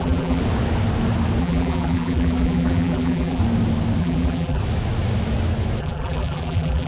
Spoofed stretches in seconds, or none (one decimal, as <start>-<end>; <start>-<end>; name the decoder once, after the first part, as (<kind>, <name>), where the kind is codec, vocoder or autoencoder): 0.0-0.4 (vocoder, BigVGAN v2); 1.4-3.4; 4.0-4.6; 5.8-6.9